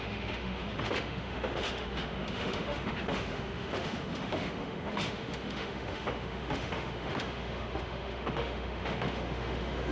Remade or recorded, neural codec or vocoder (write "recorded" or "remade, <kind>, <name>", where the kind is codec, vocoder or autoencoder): remade, autoencoder, DAC-VAE